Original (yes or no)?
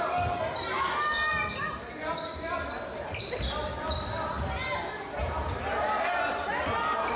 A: yes